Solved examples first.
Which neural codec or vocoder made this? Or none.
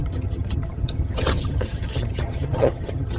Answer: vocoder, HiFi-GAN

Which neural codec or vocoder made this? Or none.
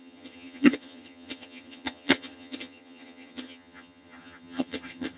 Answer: vocoder, HiFi-GAN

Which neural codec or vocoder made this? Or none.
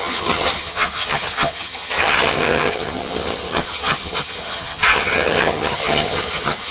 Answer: vocoder, HiFi-GAN